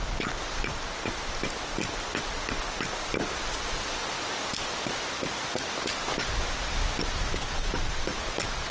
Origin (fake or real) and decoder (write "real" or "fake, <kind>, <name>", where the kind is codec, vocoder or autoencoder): real